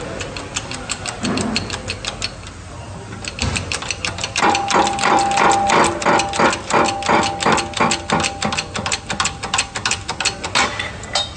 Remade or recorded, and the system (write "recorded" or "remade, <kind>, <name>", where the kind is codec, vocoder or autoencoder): recorded